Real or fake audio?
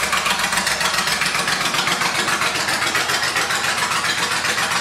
real